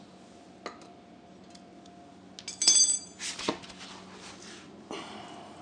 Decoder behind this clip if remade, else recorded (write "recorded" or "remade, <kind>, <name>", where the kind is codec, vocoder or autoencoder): recorded